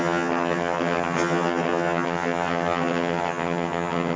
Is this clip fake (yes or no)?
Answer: yes